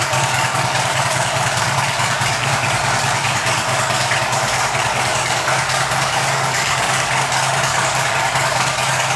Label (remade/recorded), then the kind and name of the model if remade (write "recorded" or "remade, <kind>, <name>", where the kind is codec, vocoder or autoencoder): remade, codec, DAC